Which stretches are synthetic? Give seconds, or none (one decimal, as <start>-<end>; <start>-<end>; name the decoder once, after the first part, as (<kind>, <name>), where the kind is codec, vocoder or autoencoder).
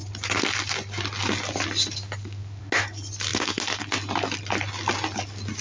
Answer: none